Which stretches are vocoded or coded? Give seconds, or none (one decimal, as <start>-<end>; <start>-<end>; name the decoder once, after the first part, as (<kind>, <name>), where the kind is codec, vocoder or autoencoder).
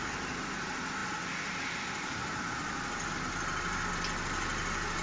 none